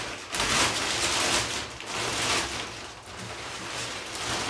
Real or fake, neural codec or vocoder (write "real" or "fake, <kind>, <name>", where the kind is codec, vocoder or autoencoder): real